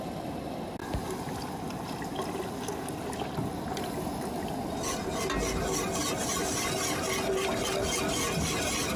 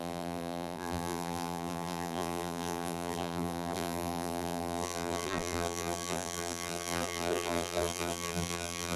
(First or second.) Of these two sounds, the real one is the first